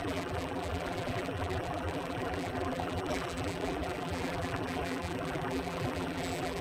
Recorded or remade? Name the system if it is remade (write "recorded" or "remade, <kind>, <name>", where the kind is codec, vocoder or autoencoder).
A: remade, vocoder, BigVGAN v2